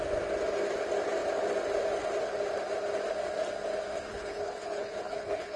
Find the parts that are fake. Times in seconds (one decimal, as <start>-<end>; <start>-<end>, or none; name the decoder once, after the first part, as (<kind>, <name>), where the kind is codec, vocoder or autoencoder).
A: 4.1-5.6 (codec, HILCodec)